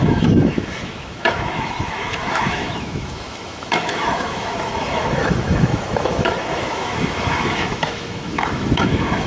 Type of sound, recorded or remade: remade